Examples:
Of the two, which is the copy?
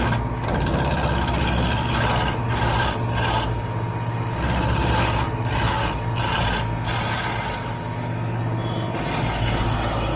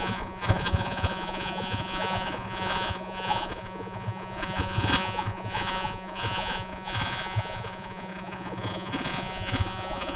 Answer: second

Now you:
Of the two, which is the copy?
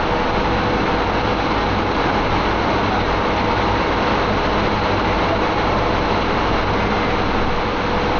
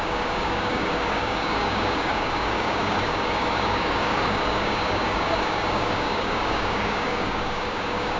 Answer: second